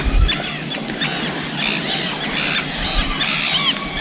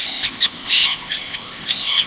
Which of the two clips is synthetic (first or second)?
second